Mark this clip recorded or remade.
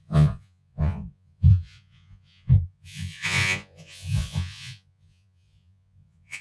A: remade